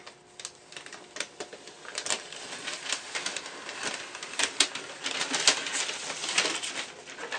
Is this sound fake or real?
real